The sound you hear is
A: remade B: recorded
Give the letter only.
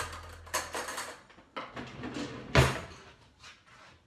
B